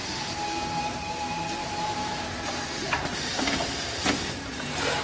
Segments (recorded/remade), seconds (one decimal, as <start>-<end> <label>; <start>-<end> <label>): 0.0-1.6 recorded; 1.6-2.2 remade; 2.2-5.0 recorded

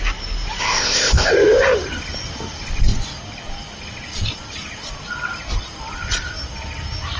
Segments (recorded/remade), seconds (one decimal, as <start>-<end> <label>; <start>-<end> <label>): 0.0-0.6 recorded; 0.6-1.3 remade; 1.3-7.2 recorded

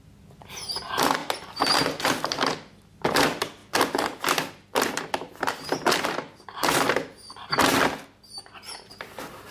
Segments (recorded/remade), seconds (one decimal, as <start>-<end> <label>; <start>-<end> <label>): 0.0-9.5 recorded

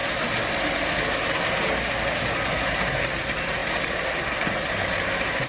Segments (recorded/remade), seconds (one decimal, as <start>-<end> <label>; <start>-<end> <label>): 0.0-5.5 recorded

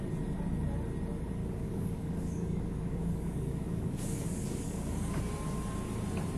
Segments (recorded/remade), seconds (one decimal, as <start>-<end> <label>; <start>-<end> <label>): 0.0-1.4 recorded; 1.4-5.2 remade; 5.2-6.4 recorded

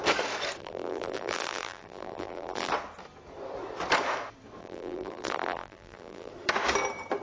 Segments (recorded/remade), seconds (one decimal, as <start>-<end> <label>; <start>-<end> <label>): 0.0-0.6 recorded; 0.6-2.7 remade; 2.7-4.6 recorded; 4.6-6.3 remade; 6.3-7.2 recorded

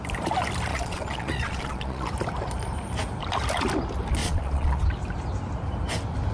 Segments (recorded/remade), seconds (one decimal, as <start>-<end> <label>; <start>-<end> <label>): 0.0-0.7 recorded; 0.7-2.1 remade; 2.1-4.2 recorded; 4.2-4.8 remade; 4.8-6.3 recorded

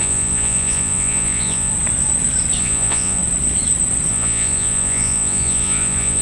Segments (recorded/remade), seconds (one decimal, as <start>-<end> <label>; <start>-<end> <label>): 0.0-1.7 remade; 1.7-2.6 recorded; 2.6-3.2 remade; 3.2-4.1 recorded; 4.1-6.2 remade